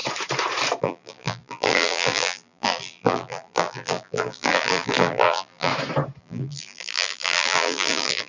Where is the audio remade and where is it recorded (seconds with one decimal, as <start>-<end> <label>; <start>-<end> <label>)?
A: 0.0-0.8 recorded; 0.8-5.7 remade; 5.7-6.2 recorded; 6.2-8.3 remade